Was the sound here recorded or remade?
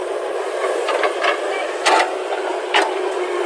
recorded